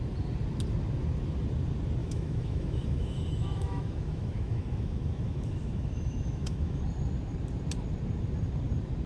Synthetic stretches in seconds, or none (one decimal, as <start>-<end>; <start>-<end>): 2.0-6.8